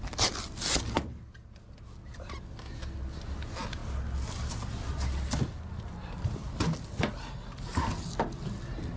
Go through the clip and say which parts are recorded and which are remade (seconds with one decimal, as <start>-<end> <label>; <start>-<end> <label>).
0.0-9.0 recorded